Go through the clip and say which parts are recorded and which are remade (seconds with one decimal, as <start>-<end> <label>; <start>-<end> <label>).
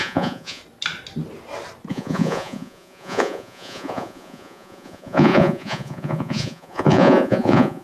0.0-0.6 remade; 0.6-1.9 recorded; 1.9-7.8 remade